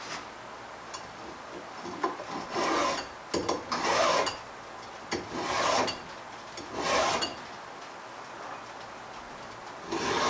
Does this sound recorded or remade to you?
recorded